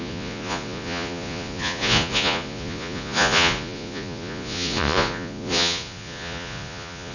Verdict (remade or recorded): remade